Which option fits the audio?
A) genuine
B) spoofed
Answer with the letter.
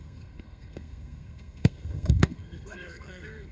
B